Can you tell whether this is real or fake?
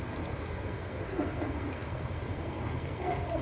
fake